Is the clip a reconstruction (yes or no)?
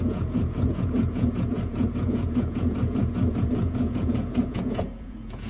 yes